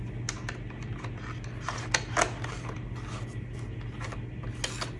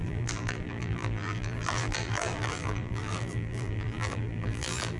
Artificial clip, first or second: second